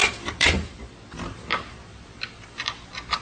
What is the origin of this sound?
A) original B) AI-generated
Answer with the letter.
B